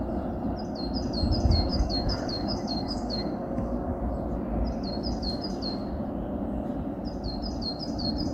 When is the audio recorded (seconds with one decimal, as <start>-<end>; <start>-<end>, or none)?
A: 0.0-1.7; 4.0-8.3